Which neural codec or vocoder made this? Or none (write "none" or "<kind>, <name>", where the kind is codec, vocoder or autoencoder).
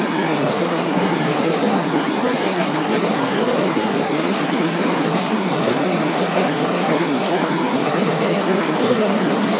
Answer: codec, SNAC